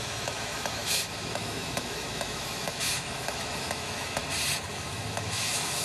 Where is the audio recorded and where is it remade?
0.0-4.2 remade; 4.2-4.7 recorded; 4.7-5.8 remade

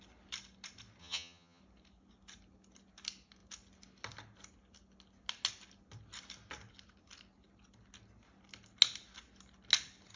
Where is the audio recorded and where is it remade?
0.0-1.0 recorded; 1.0-1.6 remade; 1.6-10.2 recorded

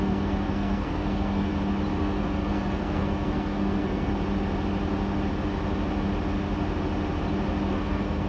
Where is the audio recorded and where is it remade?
0.0-1.5 remade; 1.5-2.0 recorded; 2.0-4.1 remade; 4.1-7.7 recorded; 7.7-8.3 remade

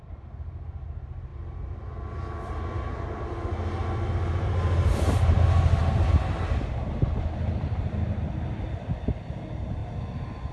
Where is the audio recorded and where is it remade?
0.0-10.5 recorded